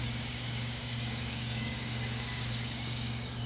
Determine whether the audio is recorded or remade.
remade